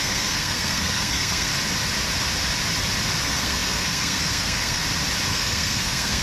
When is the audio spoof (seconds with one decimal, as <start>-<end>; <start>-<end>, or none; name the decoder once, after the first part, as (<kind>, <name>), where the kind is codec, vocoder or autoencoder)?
0.0-1.5 (codec, SNAC); 3.2-4.8; 5.3-6.2